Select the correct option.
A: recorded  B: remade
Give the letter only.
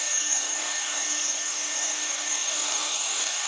B